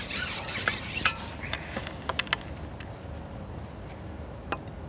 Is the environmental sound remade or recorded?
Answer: recorded